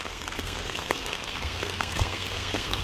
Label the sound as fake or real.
fake